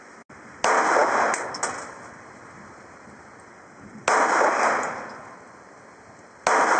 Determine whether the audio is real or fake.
real